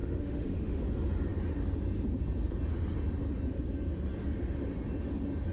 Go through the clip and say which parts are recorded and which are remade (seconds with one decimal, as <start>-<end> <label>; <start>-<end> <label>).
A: 0.0-0.8 remade; 0.8-5.5 recorded